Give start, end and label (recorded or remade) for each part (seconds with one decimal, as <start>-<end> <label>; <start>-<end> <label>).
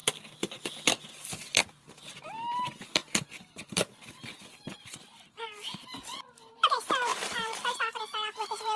0.0-1.1 recorded; 1.1-8.8 remade